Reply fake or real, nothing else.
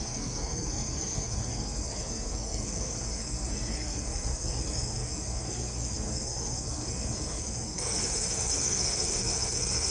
fake